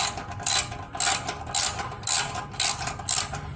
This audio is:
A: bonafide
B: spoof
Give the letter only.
A